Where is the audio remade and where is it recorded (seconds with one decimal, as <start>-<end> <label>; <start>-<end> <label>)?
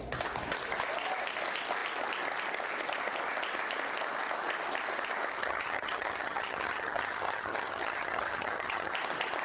0.0-5.4 recorded; 5.4-8.9 remade; 8.9-9.4 recorded